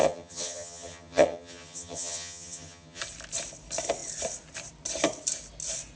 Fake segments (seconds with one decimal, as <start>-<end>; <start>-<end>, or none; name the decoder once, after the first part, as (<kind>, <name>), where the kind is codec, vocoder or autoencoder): 0.0-3.0 (vocoder, HiFi-GAN)